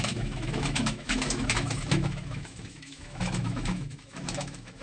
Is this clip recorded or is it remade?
remade